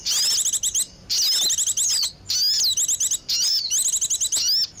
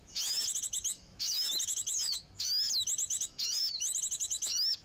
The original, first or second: first